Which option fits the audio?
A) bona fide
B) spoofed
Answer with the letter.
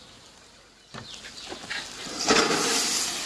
A